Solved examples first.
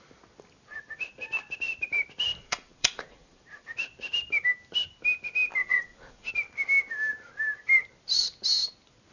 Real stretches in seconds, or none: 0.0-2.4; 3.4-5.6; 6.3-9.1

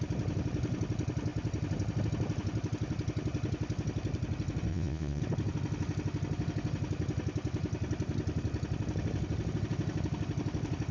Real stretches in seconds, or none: 0.0-4.7; 5.2-10.9

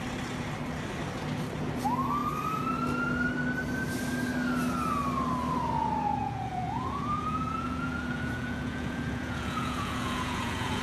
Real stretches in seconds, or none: 0.0-6.2

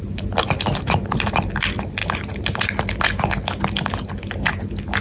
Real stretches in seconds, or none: 0.0-5.0

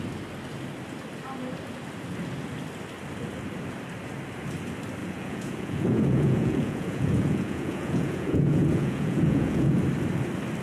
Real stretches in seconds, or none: 0.0-5.0; 9.8-10.6

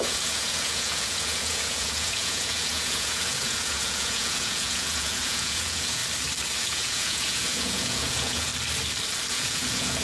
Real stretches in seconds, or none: 6.0-6.6; 8.5-9.3